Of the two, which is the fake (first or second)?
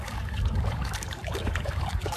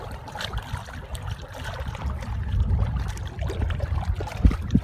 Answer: first